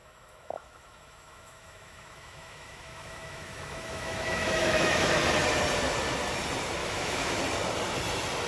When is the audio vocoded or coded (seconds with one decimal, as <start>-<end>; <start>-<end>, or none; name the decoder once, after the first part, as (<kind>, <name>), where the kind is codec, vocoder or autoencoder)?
0.0-5.1 (autoencoder, DAC-VAE); 6.8-7.4